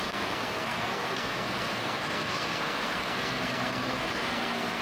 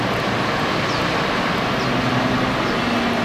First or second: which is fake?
first